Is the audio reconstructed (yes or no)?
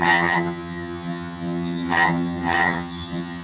yes